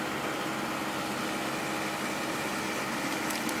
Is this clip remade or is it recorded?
recorded